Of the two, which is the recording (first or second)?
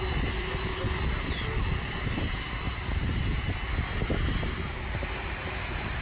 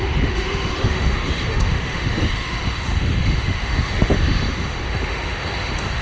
first